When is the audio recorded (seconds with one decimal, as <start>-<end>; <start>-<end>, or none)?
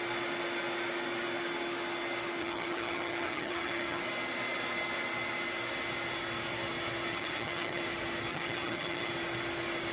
0.0-2.4; 4.0-7.1; 7.8-8.3; 9.1-9.9